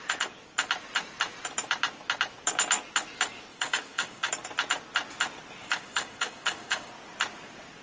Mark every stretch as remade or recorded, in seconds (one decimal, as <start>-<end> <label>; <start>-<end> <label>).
0.0-3.5 recorded; 3.5-4.3 remade; 4.3-5.6 recorded; 5.6-6.9 remade; 6.9-7.8 recorded